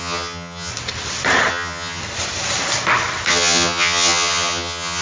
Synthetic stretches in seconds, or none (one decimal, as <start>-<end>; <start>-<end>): 0.0-0.7; 1.5-2.0; 3.3-5.0

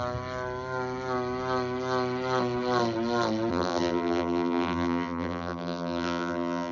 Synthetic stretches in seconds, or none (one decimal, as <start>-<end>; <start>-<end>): 3.5-6.7

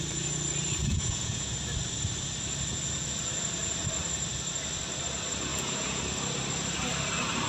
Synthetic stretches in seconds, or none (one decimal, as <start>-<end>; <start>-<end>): 0.8-1.5; 5.5-6.0

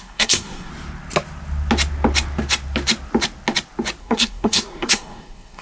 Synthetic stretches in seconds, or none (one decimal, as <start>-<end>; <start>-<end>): 0.0-0.7; 4.0-5.6

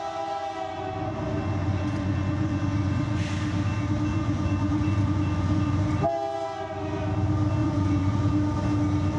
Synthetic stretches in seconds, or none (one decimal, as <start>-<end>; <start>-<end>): 1.6-3.2; 4.1-5.9; 7.6-8.3